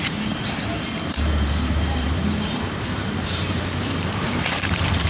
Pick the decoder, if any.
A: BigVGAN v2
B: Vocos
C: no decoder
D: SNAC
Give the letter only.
A